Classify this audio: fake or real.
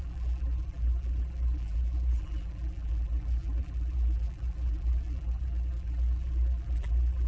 fake